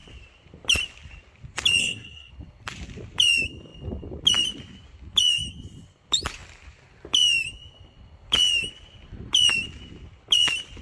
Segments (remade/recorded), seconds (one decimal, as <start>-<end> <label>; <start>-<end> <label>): 0.0-1.8 recorded; 1.8-2.3 remade; 2.3-10.8 recorded